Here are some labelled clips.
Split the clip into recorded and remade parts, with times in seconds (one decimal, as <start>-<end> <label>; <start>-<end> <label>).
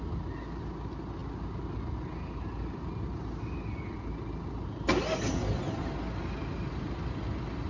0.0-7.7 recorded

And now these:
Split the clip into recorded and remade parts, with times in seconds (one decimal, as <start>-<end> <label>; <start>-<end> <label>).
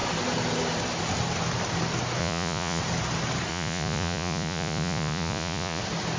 0.0-2.2 recorded; 2.2-2.8 remade; 2.8-3.5 recorded; 3.5-5.8 remade; 5.8-6.2 recorded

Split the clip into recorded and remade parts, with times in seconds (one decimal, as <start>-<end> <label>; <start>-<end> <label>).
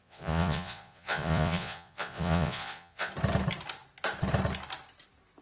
0.0-3.1 remade; 3.1-5.4 recorded